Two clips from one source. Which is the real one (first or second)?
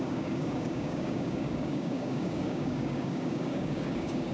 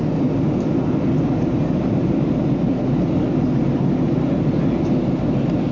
second